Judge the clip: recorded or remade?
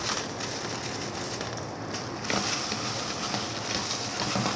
recorded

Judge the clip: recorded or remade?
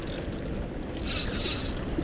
recorded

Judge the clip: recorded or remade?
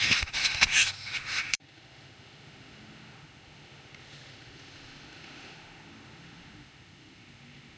remade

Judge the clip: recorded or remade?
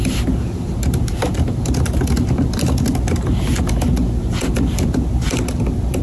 recorded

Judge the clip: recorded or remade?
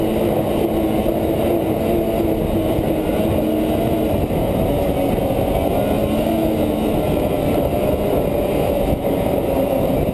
recorded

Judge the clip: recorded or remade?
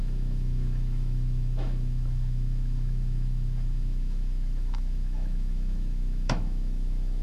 remade